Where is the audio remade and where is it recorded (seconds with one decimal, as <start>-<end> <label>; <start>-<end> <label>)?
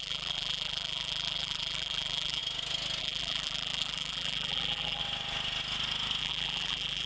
0.0-2.4 remade; 2.4-3.0 recorded; 3.0-5.0 remade; 5.0-6.2 recorded; 6.2-7.1 remade